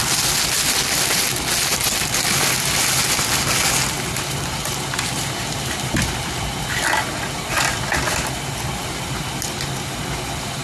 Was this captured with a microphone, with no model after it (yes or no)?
yes